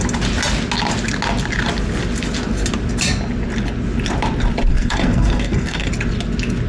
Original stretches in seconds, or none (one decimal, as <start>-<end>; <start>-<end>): 0.0-4.7; 5.9-6.7